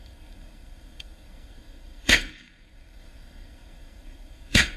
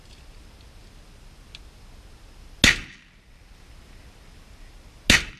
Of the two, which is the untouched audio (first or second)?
second